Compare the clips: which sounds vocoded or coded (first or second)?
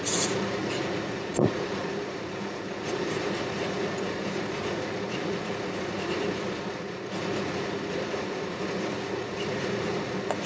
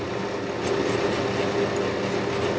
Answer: first